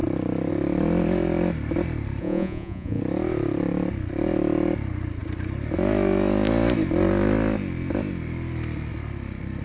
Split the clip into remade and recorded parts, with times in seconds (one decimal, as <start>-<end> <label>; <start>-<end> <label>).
0.0-2.2 recorded; 2.2-3.0 remade; 3.0-9.6 recorded